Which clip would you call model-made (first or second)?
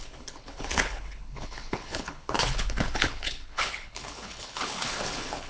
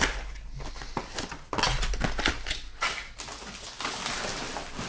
first